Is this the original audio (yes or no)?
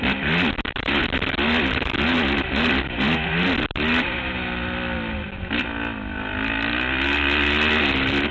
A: yes